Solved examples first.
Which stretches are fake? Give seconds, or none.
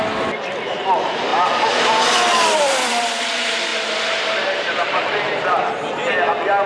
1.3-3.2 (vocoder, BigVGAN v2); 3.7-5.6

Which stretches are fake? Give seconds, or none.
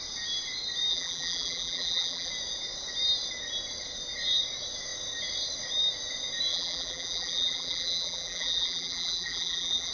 0.9-2.3 (vocoder, BigVGAN v2); 6.5-9.9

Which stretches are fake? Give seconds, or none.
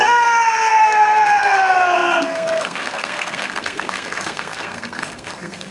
0.0-5.7 (codec, SNAC)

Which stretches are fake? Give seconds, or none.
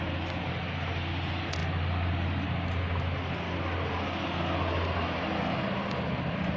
none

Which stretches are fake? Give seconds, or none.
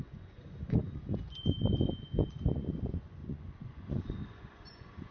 0.0-5.1 (vocoder, Vocos)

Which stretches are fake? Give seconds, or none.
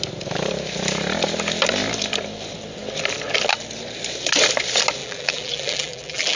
5.0-6.4 (vocoder, BigVGAN v2)